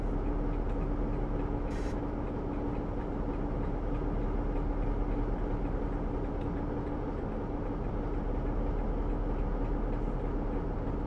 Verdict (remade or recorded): recorded